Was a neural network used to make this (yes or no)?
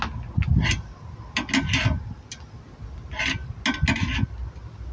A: no